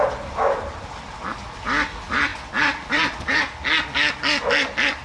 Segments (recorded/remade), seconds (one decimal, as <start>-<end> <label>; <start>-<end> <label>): 0.0-5.0 recorded